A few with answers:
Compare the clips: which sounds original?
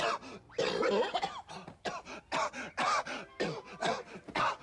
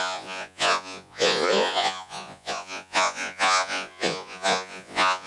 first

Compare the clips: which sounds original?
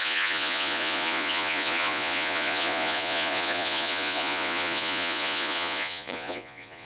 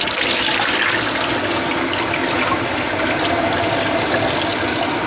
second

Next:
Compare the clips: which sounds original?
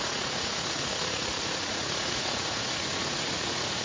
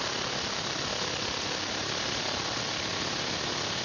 second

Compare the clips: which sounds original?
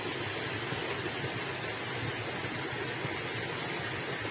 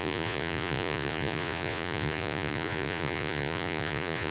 first